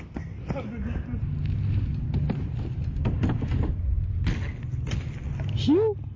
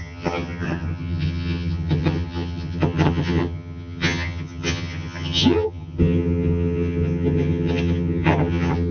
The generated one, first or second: second